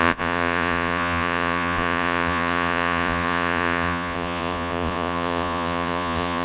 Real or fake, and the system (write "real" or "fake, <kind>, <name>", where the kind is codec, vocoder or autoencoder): fake, vocoder, Vocos